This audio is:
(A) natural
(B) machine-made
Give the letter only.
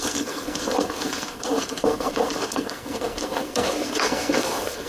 B